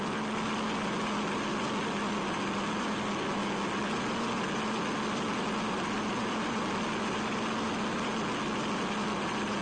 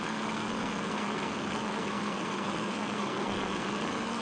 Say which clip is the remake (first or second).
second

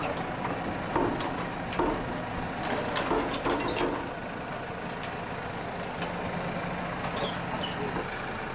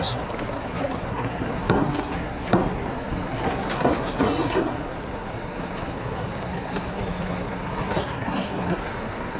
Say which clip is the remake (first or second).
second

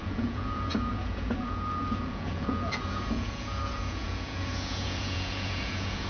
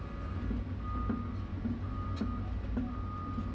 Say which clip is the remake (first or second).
first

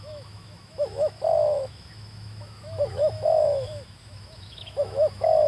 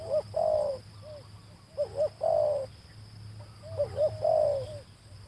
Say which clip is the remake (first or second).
first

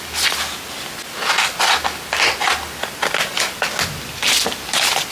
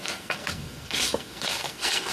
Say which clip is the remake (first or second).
second